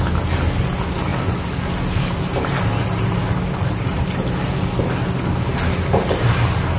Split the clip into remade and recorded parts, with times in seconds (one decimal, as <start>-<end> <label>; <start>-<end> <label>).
0.0-6.8 recorded